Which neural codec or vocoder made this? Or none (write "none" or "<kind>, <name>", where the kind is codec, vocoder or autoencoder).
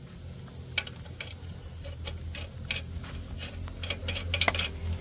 none